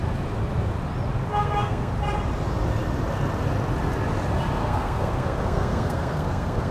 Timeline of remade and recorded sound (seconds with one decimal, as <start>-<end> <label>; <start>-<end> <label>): 0.0-1.3 recorded; 1.3-1.9 remade; 1.9-4.6 recorded; 4.6-6.7 remade